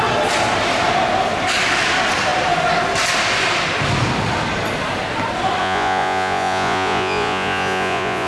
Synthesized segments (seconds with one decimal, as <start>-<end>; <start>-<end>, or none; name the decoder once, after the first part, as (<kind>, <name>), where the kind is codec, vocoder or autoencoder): 5.6-8.3 (vocoder, Vocos)